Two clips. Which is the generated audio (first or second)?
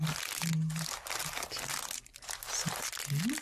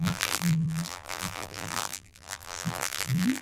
second